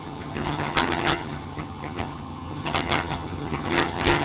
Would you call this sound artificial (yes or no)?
yes